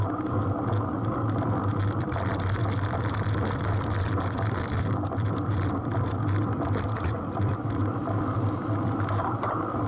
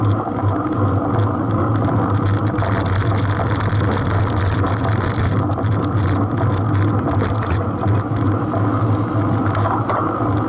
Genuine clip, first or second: second